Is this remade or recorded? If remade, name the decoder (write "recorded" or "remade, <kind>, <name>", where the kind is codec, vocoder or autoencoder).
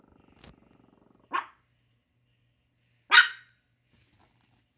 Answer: recorded